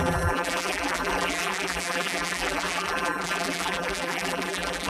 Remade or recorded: remade